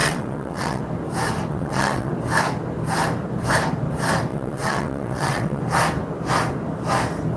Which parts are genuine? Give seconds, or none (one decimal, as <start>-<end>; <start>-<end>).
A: 0.8-1.5; 2.1-4.3; 5.6-7.4